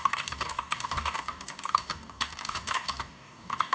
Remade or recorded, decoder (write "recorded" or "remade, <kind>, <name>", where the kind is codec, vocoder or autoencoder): remade, codec, DAC